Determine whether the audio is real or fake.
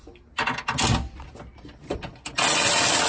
real